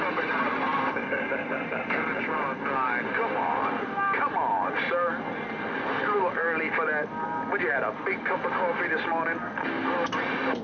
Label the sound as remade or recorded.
recorded